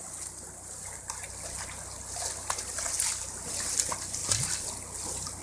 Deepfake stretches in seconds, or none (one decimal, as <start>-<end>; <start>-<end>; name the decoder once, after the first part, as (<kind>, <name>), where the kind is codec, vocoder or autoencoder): none